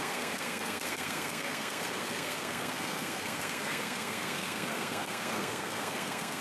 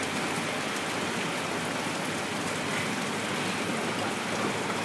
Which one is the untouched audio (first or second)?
second